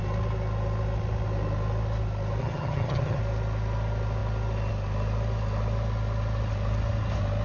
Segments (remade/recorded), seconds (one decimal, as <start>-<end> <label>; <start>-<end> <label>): 0.0-2.4 recorded; 2.4-3.2 remade; 3.2-7.4 recorded